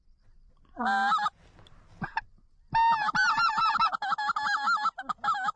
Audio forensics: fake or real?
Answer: real